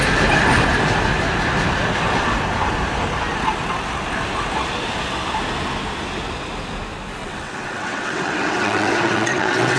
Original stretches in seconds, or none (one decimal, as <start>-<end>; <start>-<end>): 0.0-7.2